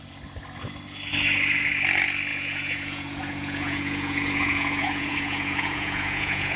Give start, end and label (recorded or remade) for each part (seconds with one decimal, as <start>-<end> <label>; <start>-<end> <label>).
0.0-2.3 recorded; 2.3-6.6 remade